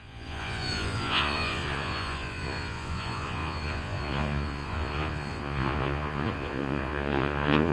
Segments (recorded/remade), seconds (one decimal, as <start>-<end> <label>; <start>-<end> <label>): 0.0-7.7 remade